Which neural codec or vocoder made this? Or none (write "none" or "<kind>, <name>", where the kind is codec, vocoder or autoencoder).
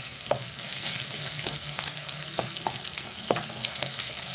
codec, SNAC